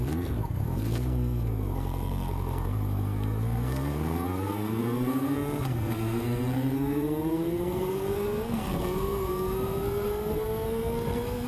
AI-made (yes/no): yes